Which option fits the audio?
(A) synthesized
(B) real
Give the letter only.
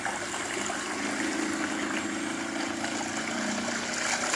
B